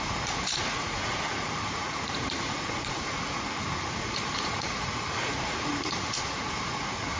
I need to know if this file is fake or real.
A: fake